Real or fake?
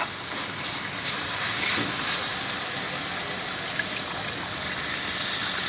real